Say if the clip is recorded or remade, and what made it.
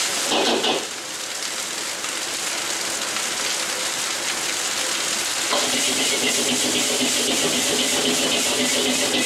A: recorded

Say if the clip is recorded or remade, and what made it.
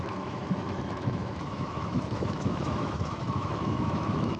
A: remade, autoencoder, DAC-VAE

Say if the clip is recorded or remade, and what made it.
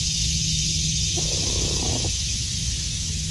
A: remade, autoencoder, DAC-VAE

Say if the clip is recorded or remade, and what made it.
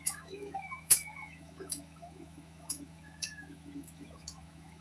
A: remade, autoencoder, DAC-VAE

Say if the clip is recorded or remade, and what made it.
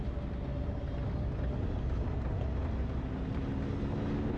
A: recorded